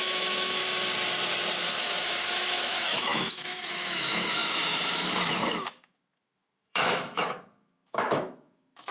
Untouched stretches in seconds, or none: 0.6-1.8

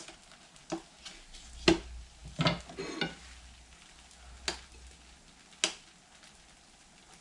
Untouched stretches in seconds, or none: 0.0-7.2

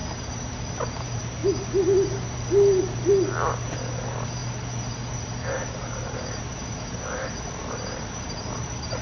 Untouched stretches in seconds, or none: 0.0-9.0

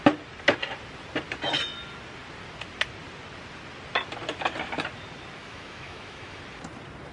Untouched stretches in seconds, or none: 0.0-5.4; 6.4-7.1

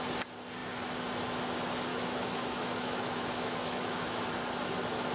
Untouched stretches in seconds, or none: 0.0-1.9; 4.2-5.1

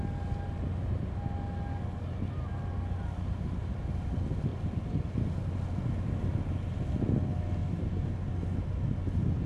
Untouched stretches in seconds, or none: 0.0-9.5